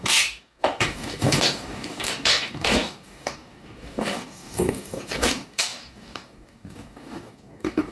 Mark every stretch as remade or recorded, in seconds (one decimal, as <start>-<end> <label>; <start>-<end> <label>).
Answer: 0.0-7.9 remade